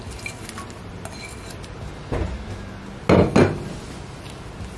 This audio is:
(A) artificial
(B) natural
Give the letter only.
B